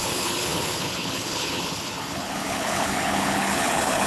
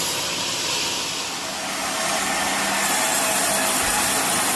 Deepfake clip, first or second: first